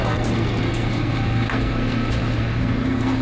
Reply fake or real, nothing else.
fake